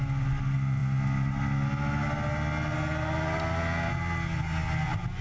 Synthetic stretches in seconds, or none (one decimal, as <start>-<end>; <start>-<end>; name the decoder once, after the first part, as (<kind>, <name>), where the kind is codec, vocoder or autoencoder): none